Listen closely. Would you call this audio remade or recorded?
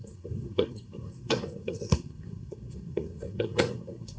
remade